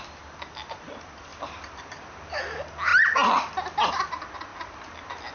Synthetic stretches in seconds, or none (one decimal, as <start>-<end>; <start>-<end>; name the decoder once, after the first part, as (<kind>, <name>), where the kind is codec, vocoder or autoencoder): 1.3-2.4 (vocoder, BigVGAN v2); 4.5-5.3